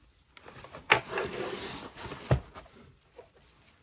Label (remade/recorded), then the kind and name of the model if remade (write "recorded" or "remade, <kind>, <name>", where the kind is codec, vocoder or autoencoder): recorded